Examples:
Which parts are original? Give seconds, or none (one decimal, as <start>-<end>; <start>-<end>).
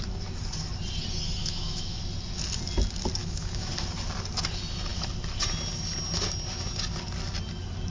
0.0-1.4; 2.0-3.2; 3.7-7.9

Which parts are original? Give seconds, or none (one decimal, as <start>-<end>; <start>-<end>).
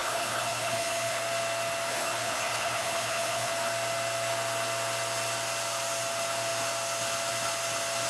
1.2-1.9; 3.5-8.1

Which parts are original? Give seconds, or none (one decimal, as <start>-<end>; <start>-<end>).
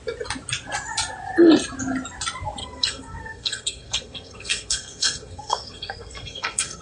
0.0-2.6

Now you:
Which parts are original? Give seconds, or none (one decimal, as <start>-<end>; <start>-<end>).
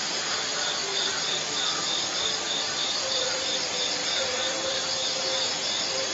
0.0-0.5; 0.9-4.4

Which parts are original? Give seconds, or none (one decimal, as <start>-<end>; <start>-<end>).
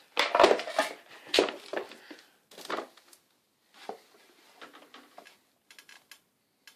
0.0-6.8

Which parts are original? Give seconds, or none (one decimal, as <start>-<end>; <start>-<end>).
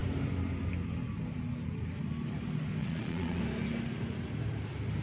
0.0-2.8; 3.4-5.0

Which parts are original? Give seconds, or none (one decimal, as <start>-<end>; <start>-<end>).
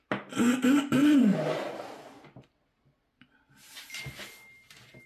0.0-1.0; 2.9-5.1